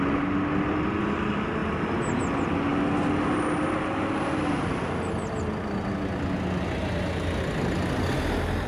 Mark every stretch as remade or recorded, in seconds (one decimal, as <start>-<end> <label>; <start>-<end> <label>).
0.0-8.7 recorded